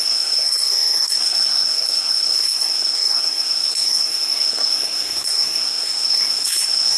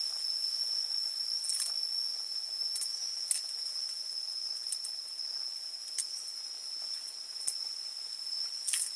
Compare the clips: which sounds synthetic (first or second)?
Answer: first